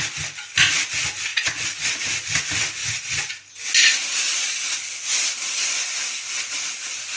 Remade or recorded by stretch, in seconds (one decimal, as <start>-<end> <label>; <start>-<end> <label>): 0.0-2.8 recorded; 2.8-3.3 remade; 3.3-5.1 recorded; 5.1-7.2 remade